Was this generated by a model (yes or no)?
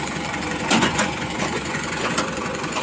yes